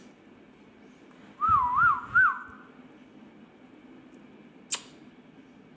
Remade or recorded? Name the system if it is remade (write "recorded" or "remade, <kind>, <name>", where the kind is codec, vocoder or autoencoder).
recorded